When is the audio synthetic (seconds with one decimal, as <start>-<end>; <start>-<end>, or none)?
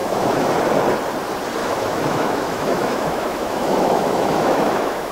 0.0-0.5; 1.6-5.1